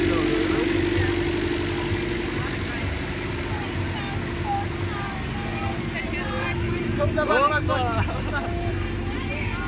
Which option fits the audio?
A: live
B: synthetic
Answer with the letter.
A